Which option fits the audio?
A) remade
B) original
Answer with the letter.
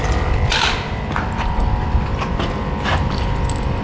B